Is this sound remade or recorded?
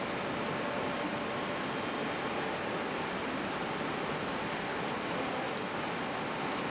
recorded